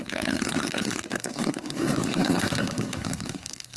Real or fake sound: fake